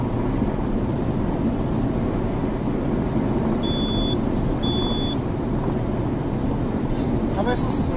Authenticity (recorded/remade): recorded